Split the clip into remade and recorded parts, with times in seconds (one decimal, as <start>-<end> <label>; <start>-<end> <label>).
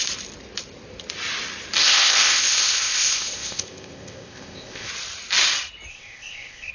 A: 0.0-1.8 recorded; 1.8-4.9 remade; 4.9-5.9 recorded; 5.9-6.7 remade